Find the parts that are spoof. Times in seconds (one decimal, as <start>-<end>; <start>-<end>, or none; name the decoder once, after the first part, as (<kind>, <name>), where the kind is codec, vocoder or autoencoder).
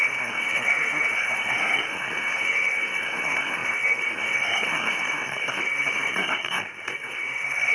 0.0-7.7 (codec, SNAC)